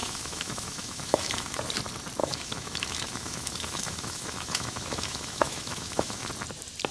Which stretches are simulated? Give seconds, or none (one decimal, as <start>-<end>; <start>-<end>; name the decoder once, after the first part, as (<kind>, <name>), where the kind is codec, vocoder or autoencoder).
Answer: 0.0-1.6 (autoencoder, DAC-VAE); 2.2-6.3